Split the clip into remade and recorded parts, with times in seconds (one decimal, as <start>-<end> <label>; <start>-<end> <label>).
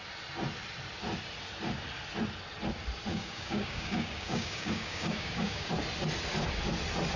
0.0-3.1 recorded; 3.1-5.7 remade; 5.7-7.2 recorded